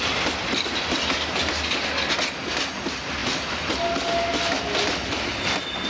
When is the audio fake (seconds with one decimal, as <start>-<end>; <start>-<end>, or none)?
none

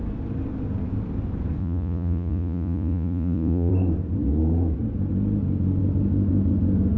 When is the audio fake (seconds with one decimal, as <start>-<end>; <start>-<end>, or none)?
1.6-3.7